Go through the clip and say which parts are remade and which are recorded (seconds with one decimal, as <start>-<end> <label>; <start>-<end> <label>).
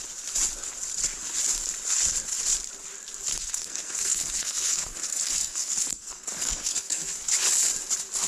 0.0-3.3 recorded; 3.3-7.3 remade; 7.3-8.3 recorded